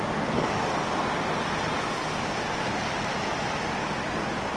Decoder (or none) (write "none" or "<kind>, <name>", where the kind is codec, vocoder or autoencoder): none